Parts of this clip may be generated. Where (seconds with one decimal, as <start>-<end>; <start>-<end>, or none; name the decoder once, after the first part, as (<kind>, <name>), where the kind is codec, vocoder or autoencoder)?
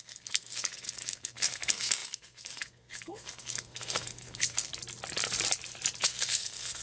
0.0-4.7 (codec, SNAC); 6.0-6.8